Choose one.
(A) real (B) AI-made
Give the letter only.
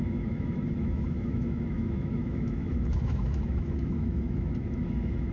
B